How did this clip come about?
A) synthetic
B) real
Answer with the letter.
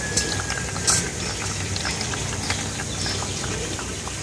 B